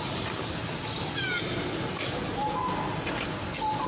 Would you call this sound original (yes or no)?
yes